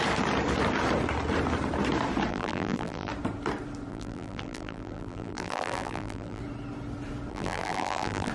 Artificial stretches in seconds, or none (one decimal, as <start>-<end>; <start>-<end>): 2.3-3.1; 3.9-6.4; 7.3-8.3